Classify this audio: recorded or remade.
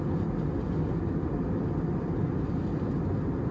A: recorded